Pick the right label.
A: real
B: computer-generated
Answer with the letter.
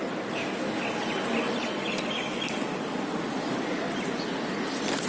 A